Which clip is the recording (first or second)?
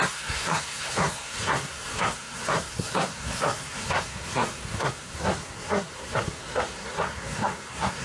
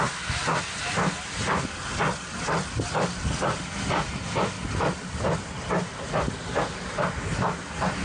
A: second